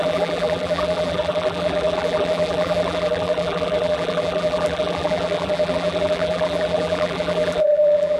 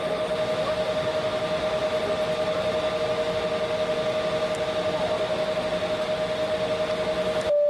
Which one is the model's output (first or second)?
first